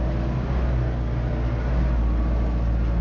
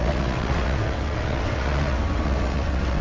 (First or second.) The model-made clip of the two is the second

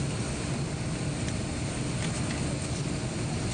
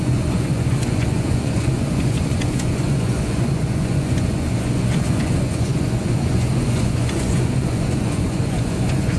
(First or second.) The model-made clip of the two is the second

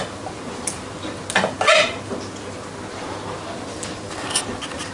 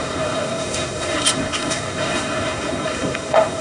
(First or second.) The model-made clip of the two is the second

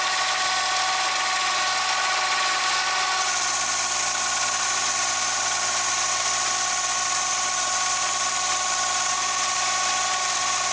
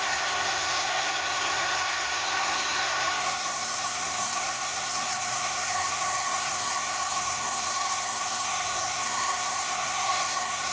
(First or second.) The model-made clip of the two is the second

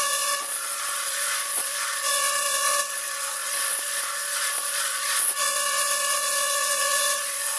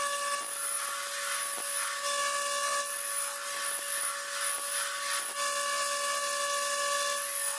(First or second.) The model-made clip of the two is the first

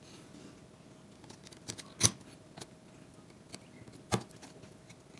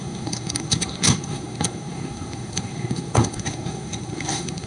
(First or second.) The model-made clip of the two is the second